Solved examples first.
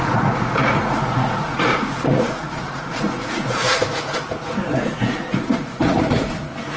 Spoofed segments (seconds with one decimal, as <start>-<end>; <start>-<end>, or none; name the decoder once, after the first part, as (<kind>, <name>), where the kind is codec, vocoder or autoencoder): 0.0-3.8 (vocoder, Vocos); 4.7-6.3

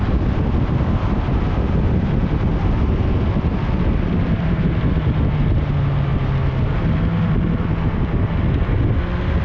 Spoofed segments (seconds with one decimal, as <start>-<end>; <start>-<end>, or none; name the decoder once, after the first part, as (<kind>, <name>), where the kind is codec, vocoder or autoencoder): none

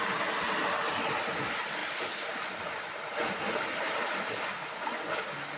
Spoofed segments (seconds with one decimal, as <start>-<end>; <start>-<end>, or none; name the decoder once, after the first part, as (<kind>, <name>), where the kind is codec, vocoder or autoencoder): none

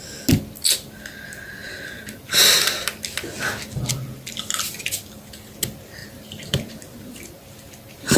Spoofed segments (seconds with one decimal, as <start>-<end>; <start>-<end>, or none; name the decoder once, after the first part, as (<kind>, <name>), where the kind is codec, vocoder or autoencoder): 6.0-7.2 (vocoder, BigVGAN v2)